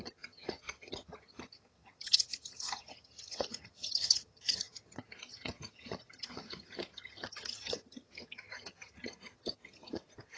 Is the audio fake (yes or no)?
yes